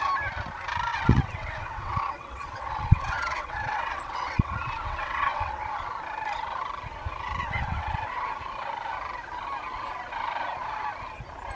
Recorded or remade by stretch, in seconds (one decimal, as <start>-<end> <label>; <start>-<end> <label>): 0.0-0.9 recorded; 0.9-5.6 remade; 5.6-7.4 recorded; 7.4-8.1 remade; 8.1-11.6 recorded